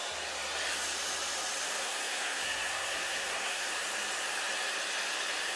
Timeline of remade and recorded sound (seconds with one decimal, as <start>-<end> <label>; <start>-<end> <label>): 0.0-1.8 recorded; 1.8-3.7 remade; 3.7-5.6 recorded